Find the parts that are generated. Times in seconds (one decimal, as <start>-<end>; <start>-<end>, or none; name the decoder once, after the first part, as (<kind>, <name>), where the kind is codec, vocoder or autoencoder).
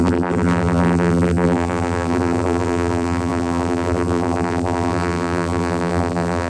0.0-6.5 (vocoder, BigVGAN v2)